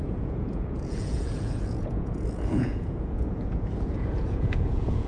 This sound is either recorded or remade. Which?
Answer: remade